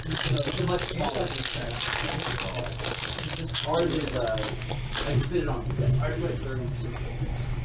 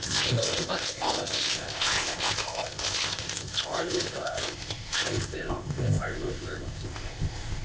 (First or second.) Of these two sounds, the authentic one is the first